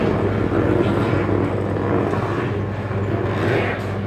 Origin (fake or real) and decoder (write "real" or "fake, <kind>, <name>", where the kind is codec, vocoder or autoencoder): real